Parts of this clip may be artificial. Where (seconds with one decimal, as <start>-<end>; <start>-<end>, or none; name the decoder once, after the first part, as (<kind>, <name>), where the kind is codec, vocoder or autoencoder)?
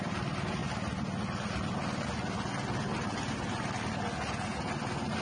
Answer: none